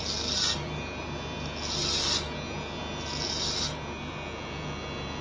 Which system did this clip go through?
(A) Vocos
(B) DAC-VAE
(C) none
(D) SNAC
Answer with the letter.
C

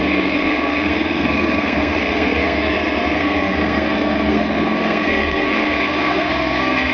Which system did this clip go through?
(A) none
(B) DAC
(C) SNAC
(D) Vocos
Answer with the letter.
C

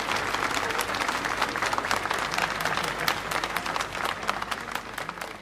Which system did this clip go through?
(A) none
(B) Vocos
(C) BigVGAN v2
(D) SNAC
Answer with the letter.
A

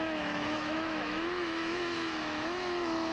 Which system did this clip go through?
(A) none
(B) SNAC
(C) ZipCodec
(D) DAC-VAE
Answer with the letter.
D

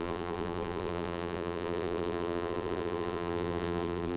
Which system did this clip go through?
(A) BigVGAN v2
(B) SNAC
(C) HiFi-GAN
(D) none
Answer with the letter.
A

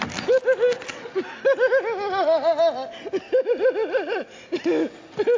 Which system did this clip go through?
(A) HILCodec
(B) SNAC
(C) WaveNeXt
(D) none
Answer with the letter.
D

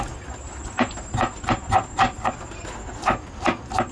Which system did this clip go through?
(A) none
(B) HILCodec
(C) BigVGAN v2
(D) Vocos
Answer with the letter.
A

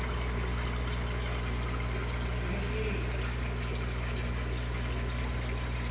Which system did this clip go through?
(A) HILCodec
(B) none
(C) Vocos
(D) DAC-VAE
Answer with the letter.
B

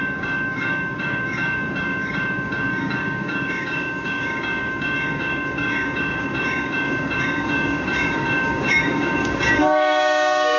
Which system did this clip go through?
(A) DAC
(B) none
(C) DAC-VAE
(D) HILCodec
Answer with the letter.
A